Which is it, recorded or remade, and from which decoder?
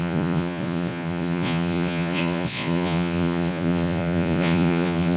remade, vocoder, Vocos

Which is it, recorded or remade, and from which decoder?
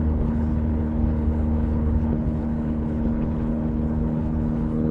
remade, codec, HILCodec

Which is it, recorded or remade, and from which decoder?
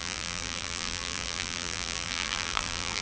remade, vocoder, BigVGAN v2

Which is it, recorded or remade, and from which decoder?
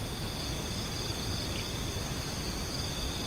recorded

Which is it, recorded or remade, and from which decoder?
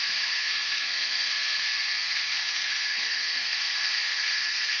remade, codec, SNAC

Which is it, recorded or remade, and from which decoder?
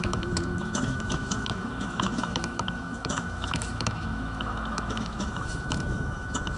remade, autoencoder, DAC-VAE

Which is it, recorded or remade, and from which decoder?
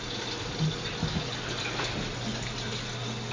recorded